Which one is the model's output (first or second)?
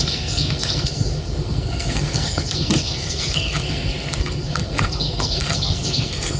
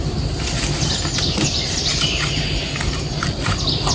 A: first